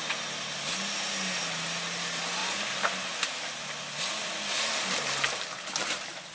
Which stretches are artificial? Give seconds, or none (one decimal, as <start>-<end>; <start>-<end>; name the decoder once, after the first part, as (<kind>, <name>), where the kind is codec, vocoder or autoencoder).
none